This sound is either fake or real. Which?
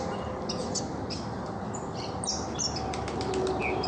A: real